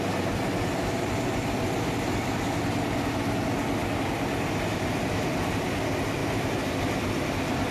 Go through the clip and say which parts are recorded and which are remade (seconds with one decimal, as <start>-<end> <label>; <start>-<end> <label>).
0.0-6.2 recorded; 6.2-6.7 remade; 6.7-7.7 recorded